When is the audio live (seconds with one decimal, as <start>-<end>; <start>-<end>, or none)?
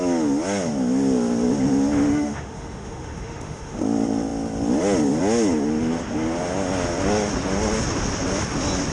0.0-2.1; 3.8-8.9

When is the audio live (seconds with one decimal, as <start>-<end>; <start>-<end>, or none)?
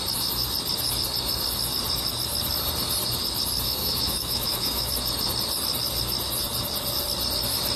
0.0-3.8; 4.9-7.8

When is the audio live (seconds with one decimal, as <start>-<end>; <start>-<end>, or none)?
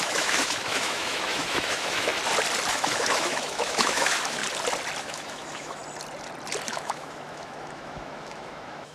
2.1-2.7; 4.4-5.0; 5.8-6.7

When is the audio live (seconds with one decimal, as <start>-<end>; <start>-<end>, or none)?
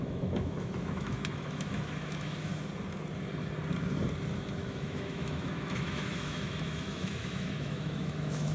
2.5-4.6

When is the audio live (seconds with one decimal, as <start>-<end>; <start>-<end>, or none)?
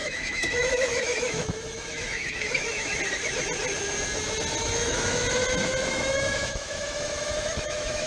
2.9-4.6; 5.2-5.9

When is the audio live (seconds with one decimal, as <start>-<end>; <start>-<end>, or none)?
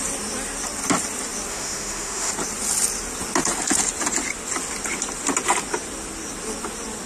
0.0-1.5; 2.3-7.1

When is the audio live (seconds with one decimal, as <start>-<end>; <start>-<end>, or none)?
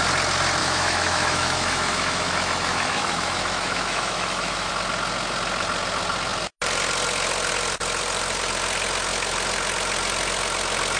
0.0-0.6; 4.7-11.0